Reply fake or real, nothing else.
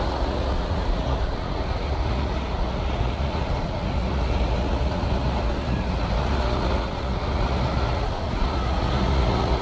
fake